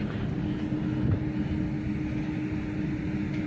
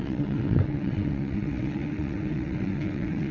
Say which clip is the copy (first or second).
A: second